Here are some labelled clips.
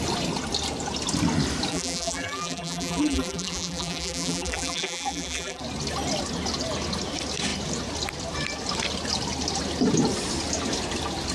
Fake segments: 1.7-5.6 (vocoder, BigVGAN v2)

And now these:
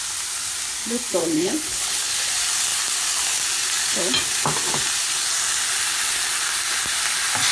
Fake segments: 1.2-2.3 (codec, HILCodec)

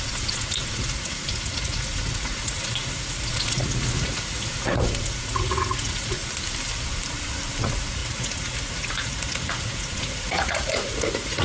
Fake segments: 0.0-6.2 (vocoder, Vocos); 7.6-11.4

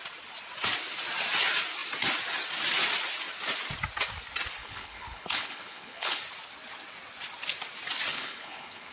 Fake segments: 4.6-6.2 (codec, HILCodec); 8.1-8.9

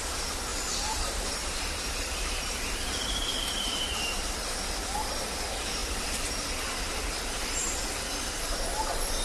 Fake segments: 0.5-4.6 (vocoder, BigVGAN v2)

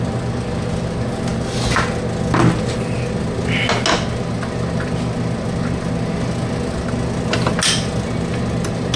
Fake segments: none

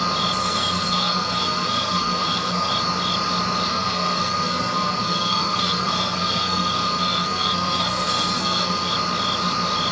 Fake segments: 0.4-2.7 (codec, SNAC); 3.7-8.9